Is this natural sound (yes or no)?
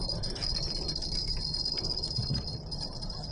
yes